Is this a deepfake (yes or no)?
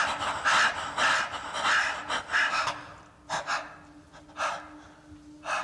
no